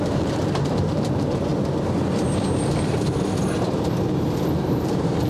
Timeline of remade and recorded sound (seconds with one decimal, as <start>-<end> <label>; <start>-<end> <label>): 0.0-1.5 remade; 1.5-4.5 recorded; 4.5-5.3 remade